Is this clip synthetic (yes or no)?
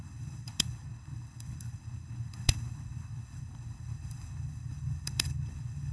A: yes